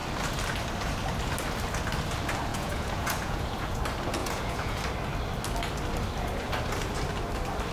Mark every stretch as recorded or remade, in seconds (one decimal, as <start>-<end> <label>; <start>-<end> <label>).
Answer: 0.0-2.5 recorded; 2.5-3.8 remade; 3.8-4.2 recorded; 4.2-4.8 remade; 4.8-7.7 recorded